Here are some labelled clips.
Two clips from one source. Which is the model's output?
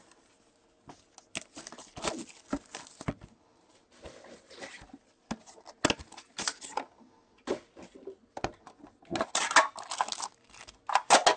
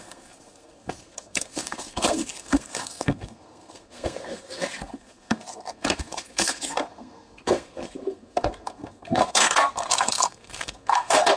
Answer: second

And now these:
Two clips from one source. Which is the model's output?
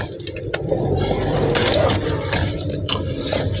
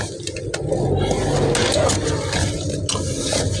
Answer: first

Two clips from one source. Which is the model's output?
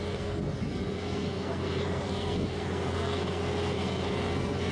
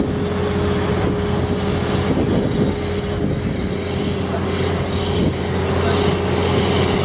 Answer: first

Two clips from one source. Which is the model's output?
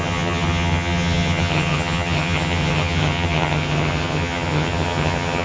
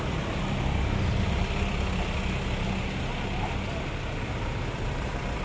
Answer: first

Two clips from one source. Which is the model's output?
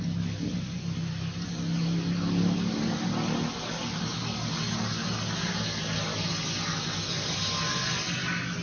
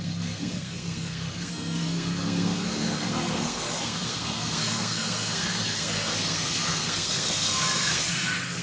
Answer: second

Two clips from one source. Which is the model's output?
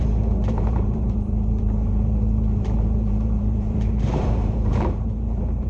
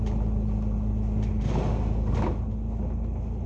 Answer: first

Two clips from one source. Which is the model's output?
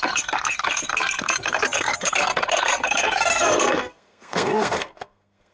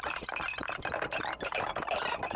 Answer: first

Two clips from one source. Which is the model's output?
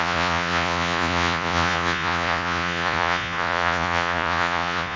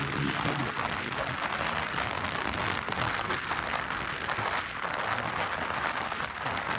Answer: first